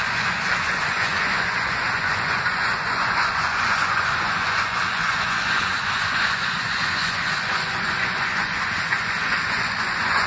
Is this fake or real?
fake